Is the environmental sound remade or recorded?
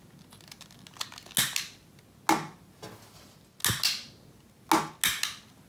recorded